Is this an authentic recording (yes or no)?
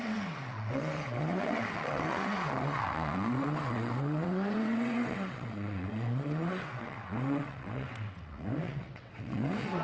no